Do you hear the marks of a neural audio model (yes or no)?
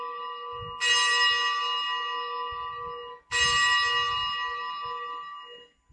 no